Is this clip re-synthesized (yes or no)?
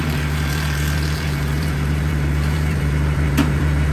yes